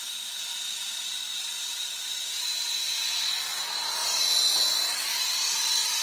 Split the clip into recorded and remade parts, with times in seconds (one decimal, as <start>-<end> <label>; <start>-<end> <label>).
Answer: 0.0-1.7 recorded; 1.7-2.3 remade; 2.3-4.0 recorded; 4.0-4.7 remade; 4.7-6.0 recorded